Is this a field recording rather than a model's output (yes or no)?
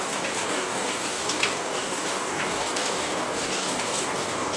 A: no